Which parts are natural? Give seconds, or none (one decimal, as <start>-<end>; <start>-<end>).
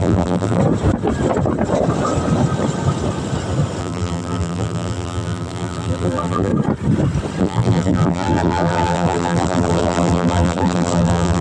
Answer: 0.6-3.8; 6.5-7.4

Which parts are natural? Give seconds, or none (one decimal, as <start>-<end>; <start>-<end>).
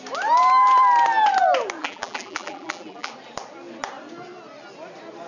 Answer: 0.0-1.8; 3.1-5.3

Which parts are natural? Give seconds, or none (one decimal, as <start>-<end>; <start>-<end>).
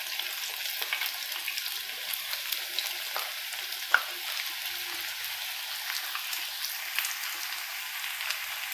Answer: 0.0-1.4; 2.4-8.7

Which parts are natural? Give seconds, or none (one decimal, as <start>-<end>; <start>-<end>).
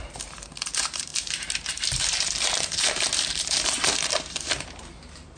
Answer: none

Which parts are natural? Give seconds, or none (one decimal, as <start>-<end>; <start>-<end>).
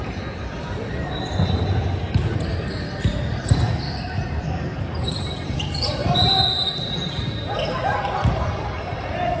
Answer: none